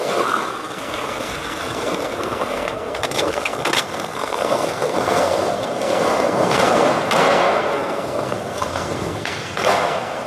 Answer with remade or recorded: remade